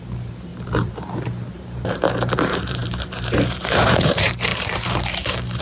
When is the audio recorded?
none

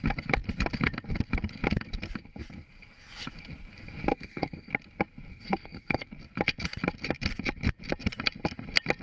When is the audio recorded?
0.0-4.1; 4.7-5.3; 6.1-9.0

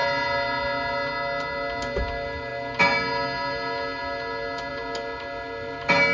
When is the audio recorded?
0.0-6.1

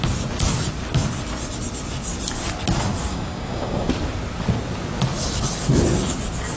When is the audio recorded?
0.0-3.1; 3.9-6.6

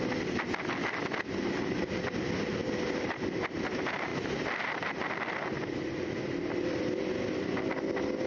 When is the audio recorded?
0.0-2.6; 3.4-8.3

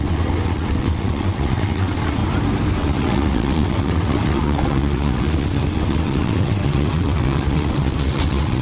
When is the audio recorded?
2.2-2.8

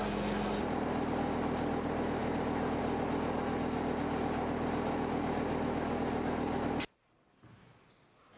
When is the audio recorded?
0.0-8.4